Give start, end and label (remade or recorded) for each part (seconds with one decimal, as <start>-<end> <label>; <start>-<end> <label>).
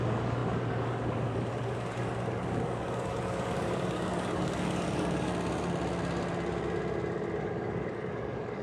0.0-5.3 remade; 5.3-7.4 recorded; 7.4-8.6 remade